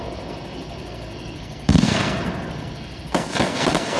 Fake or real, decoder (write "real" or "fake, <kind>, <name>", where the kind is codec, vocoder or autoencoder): fake, codec, SNAC